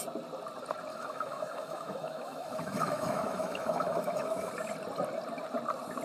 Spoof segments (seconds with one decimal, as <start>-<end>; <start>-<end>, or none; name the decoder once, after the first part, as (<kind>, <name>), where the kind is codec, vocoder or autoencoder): 0.9-4.5 (autoencoder, DAC-VAE)